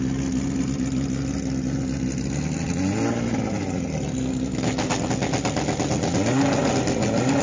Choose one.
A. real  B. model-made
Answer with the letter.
A